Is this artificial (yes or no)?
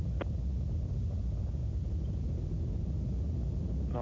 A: no